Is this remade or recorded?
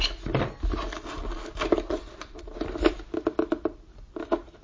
recorded